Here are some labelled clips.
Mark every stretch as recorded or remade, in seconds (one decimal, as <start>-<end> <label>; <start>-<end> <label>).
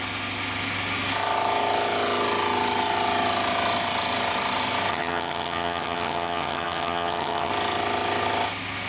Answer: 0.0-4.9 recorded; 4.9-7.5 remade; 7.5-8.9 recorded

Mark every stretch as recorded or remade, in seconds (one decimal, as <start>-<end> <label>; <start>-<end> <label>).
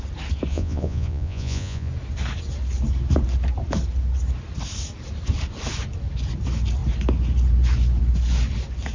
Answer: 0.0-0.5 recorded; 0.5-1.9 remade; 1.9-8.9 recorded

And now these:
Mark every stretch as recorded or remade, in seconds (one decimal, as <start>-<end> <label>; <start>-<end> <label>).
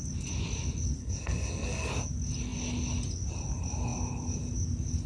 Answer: 0.0-1.0 recorded; 1.0-1.9 remade; 1.9-5.1 recorded